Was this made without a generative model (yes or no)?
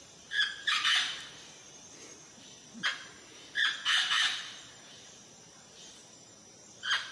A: no